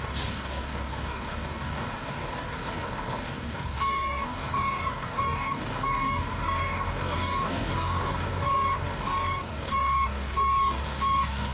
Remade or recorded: remade